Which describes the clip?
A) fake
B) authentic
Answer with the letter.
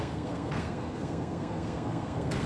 A